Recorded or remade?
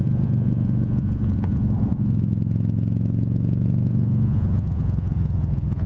remade